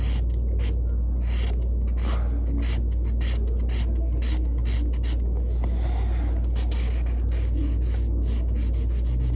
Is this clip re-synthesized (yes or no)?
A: no